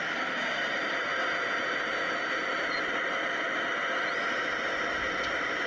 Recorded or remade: recorded